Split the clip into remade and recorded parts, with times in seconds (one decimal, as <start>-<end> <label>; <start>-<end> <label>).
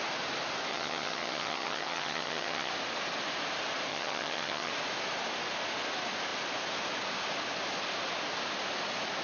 0.0-0.7 recorded; 0.7-2.7 remade; 2.7-3.9 recorded; 3.9-4.7 remade; 4.7-9.2 recorded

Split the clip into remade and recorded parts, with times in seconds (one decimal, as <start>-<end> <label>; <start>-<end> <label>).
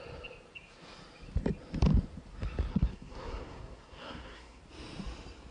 0.0-2.7 recorded; 2.7-4.6 remade; 4.6-5.5 recorded